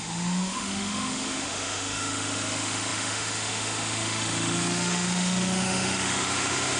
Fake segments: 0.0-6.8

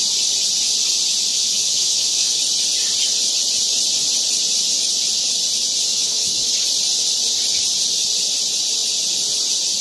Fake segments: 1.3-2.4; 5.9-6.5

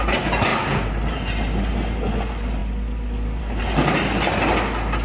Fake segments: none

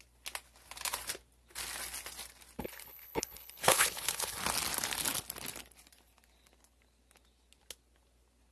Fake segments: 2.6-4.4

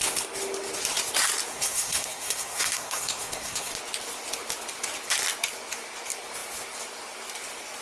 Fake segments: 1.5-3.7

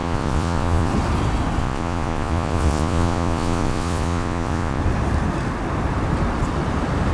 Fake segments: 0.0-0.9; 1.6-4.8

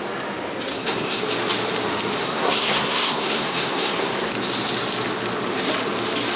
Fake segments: 0.7-1.2; 2.2-4.3

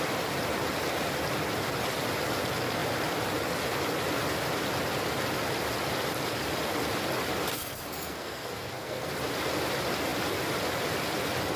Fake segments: 7.5-9.1